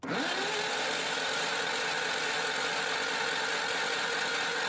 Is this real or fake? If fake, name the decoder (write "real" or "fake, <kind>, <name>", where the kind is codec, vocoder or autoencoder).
real